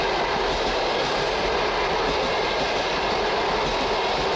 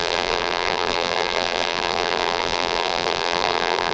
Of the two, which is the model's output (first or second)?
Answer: second